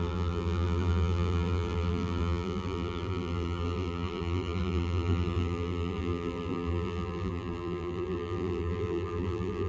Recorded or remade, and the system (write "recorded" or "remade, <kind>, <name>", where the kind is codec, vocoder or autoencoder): remade, vocoder, BigVGAN v2